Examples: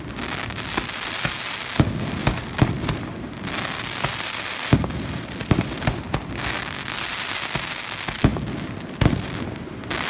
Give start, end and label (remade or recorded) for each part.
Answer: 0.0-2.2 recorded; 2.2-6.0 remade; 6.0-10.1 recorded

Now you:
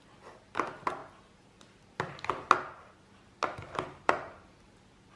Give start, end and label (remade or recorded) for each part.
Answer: 0.0-5.2 recorded

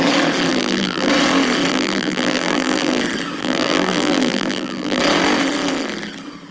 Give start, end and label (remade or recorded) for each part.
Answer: 0.0-0.5 recorded; 0.5-1.1 remade; 1.1-1.7 recorded; 1.7-3.0 remade; 3.0-3.4 recorded; 3.4-5.0 remade; 5.0-6.5 recorded

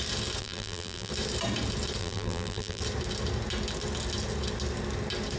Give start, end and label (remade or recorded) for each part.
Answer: 0.0-0.4 recorded; 0.4-1.1 remade; 1.1-2.0 recorded; 2.0-2.8 remade; 2.8-5.4 recorded

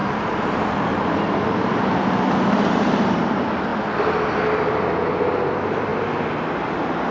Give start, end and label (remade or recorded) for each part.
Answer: 0.0-3.1 remade; 3.1-7.1 recorded